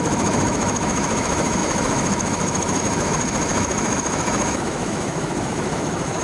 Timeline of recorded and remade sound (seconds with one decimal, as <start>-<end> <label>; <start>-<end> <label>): 0.0-6.2 remade